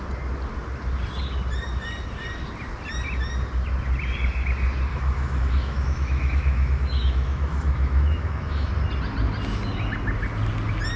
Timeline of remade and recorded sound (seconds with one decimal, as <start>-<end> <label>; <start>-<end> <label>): 0.0-4.9 recorded; 4.9-8.7 remade; 8.7-11.0 recorded